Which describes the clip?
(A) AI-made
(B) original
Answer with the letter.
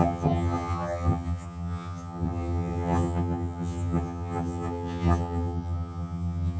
A